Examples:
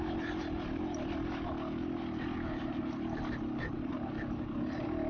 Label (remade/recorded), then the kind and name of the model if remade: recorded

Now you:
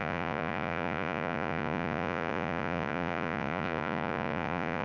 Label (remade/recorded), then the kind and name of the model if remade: remade, vocoder, Vocos